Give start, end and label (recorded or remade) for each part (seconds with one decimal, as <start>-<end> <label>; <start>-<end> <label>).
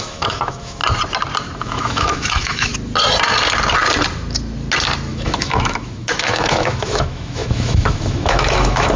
0.0-0.8 remade; 0.8-1.6 recorded; 1.6-2.7 remade; 2.7-5.1 recorded; 5.1-9.0 remade